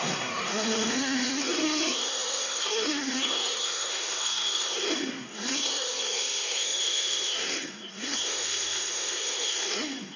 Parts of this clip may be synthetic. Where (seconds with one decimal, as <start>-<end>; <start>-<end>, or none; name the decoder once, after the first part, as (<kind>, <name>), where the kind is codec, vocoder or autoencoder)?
0.0-10.2 (codec, SNAC)